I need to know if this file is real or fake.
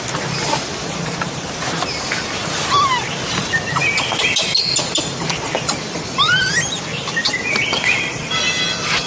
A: real